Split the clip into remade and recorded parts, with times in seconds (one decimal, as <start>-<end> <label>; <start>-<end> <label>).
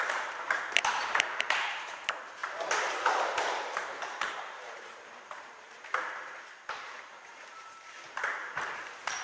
0.0-2.4 remade; 2.4-3.7 recorded; 3.7-9.2 remade